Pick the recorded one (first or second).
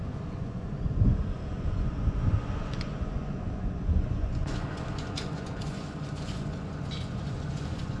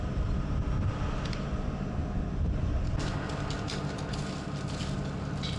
second